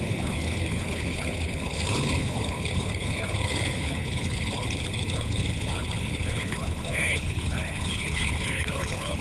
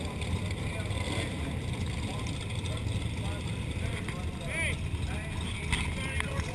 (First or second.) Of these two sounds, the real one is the second